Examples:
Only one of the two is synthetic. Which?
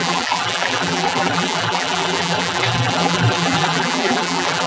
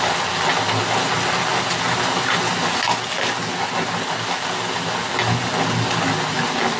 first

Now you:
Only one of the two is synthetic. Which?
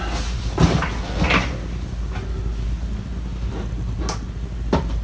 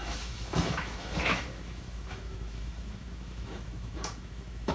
second